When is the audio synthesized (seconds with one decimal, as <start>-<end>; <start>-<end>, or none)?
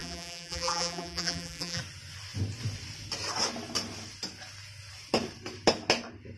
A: 0.0-1.8